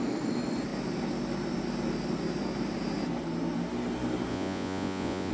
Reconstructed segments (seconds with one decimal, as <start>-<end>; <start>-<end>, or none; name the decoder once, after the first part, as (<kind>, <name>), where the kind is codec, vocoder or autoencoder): 4.3-5.3 (vocoder, Vocos)